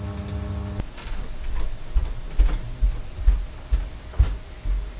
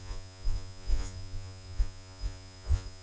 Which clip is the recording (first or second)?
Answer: first